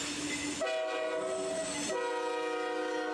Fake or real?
real